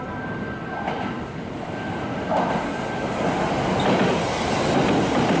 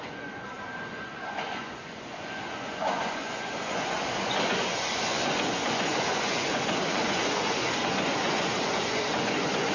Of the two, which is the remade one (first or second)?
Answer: second